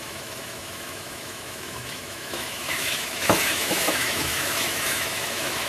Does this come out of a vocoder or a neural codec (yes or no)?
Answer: yes